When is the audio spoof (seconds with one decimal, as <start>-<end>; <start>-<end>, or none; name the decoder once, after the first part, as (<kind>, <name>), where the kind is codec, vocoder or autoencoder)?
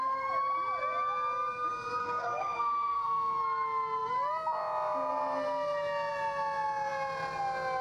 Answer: 2.0-3.4 (codec, SNAC)